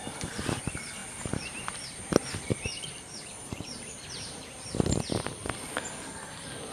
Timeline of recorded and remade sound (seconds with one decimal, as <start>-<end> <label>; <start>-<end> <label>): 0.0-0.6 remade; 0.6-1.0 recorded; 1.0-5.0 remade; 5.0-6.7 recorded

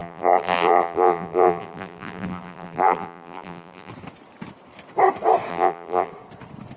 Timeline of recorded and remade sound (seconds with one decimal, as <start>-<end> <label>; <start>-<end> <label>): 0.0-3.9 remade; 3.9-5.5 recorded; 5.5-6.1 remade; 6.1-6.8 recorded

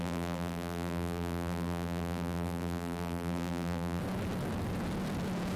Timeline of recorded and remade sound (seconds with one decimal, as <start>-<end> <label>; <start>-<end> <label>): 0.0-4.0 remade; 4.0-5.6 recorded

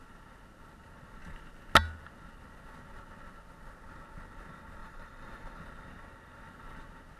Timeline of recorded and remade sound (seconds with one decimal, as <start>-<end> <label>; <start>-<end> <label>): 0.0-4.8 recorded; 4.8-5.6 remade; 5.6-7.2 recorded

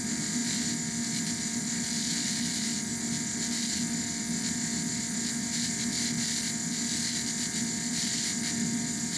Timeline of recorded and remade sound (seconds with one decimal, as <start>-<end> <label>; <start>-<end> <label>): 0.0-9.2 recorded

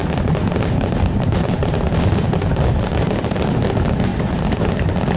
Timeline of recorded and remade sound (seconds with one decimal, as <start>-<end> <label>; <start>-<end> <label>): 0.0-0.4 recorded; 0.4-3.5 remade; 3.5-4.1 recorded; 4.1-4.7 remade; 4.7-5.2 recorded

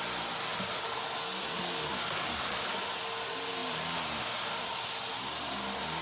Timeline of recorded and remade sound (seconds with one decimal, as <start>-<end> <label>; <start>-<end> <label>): 0.0-6.0 recorded